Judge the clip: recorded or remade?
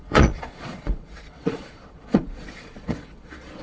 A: remade